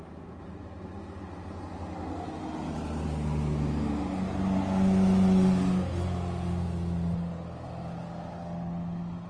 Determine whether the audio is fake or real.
real